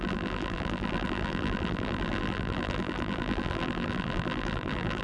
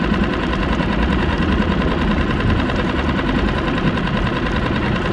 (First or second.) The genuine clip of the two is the second